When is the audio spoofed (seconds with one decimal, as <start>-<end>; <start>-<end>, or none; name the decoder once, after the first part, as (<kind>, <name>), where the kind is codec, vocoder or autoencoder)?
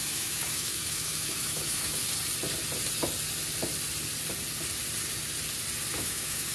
0.0-2.0 (autoencoder, DAC-VAE); 5.9-6.5